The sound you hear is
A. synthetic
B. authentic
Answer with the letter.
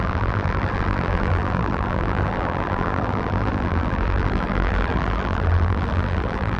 A